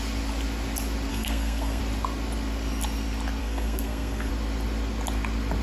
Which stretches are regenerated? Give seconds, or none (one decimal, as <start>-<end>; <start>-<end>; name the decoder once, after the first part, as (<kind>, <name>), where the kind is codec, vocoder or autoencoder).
1.1-1.8 (codec, SNAC); 3.4-4.3